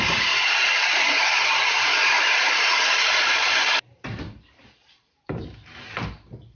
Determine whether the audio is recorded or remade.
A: remade